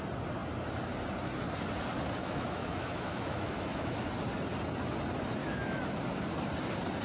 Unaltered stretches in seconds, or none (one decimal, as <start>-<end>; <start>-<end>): 0.0-2.2; 4.1-5.4; 6.0-7.0